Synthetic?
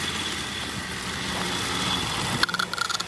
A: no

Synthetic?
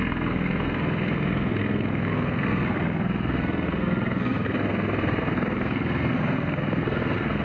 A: yes